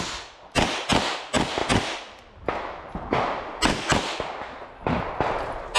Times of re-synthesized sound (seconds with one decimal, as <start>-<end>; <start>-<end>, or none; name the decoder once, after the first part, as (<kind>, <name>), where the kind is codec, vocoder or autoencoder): none